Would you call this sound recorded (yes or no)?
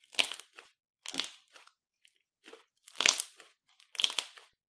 yes